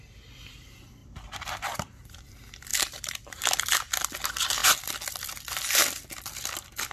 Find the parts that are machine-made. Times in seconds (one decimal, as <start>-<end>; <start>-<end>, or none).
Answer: 0.0-6.9